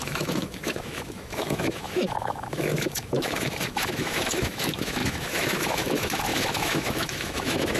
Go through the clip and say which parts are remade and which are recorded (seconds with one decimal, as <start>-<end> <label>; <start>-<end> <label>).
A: 0.0-7.8 remade